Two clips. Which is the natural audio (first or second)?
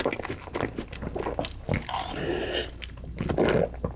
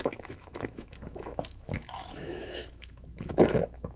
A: first